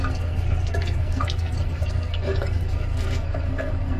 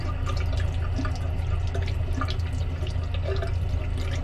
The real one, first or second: second